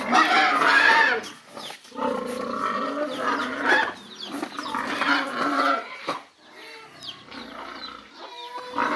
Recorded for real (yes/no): yes